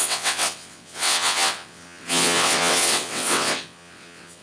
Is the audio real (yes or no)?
no